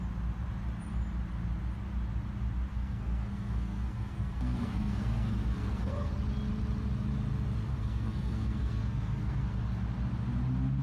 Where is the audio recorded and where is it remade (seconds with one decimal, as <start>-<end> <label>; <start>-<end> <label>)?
0.0-2.7 recorded; 2.7-6.1 remade; 6.1-7.7 recorded; 7.7-9.6 remade; 9.6-10.8 recorded